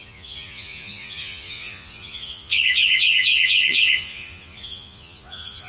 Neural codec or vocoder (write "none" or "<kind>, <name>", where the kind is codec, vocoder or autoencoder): vocoder, Vocos